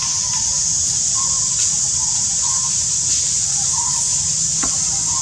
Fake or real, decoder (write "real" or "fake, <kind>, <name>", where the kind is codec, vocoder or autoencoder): real